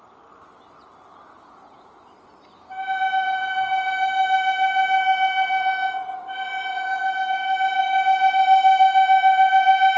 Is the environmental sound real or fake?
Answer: real